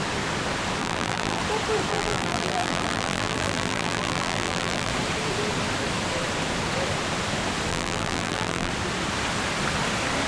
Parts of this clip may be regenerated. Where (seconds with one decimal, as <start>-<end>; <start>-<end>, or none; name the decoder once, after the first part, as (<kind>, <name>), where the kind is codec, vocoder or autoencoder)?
0.8-1.4 (vocoder, BigVGAN v2); 1.9-4.9; 7.7-8.7